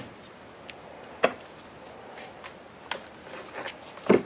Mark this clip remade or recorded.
recorded